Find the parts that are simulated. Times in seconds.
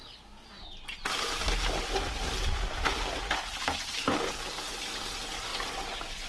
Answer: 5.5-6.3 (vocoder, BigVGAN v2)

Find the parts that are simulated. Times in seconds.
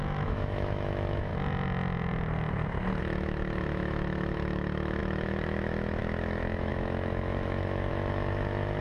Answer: 0.0-1.3 (autoencoder, DAC-VAE); 3.0-8.8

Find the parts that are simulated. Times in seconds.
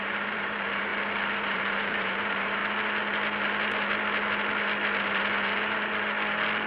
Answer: 0.0-0.9 (vocoder, BigVGAN v2); 1.4-2.6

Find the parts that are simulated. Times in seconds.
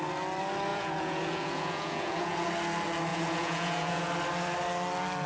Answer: 0.7-2.5 (vocoder, Vocos); 3.1-4.1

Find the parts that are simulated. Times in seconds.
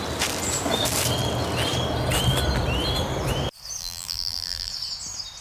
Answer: 3.8-4.7 (vocoder, BigVGAN v2)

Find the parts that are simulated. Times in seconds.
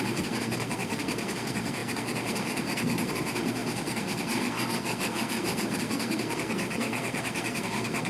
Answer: 0.0-8.1 (codec, SNAC)